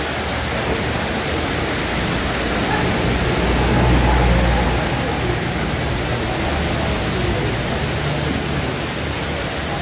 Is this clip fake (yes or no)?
no